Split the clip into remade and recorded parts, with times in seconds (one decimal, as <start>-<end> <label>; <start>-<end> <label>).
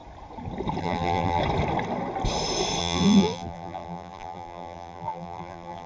0.0-0.8 recorded; 0.8-1.4 remade; 1.4-2.8 recorded; 2.8-5.9 remade